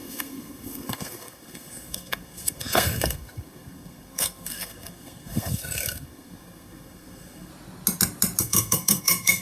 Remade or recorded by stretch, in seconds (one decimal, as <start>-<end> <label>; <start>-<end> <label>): 0.0-7.5 remade; 7.5-8.4 recorded; 8.4-9.4 remade